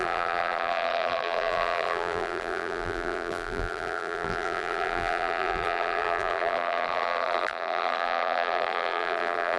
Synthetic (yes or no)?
yes